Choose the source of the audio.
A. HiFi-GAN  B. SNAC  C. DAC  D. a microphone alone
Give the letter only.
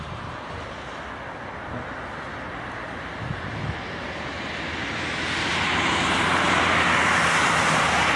D